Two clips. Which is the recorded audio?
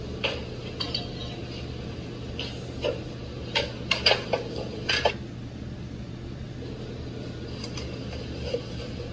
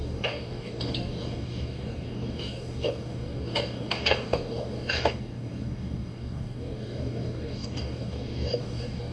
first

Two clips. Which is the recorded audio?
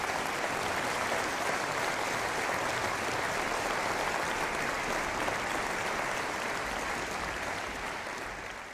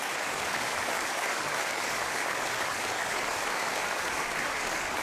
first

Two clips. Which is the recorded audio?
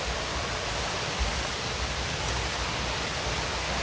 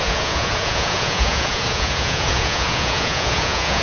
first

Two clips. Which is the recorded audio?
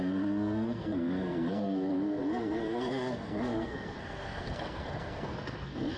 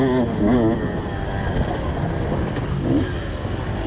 second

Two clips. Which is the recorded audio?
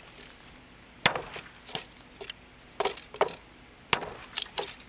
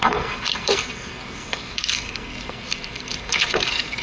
first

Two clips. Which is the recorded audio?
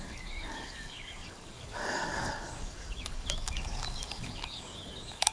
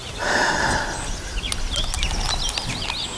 second